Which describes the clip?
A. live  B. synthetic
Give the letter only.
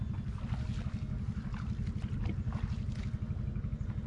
A